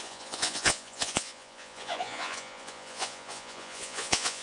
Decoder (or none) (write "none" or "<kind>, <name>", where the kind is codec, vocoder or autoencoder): vocoder, Vocos